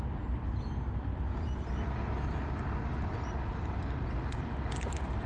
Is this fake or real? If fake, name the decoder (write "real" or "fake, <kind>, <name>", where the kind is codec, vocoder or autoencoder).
real